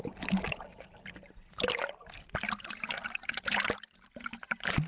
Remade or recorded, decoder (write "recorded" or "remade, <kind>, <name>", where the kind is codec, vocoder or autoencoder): recorded